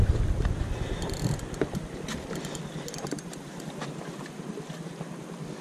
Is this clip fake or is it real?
real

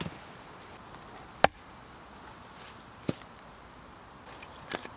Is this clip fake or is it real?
real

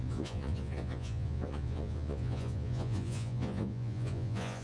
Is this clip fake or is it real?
fake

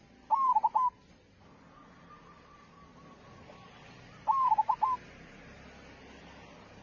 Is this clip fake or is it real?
real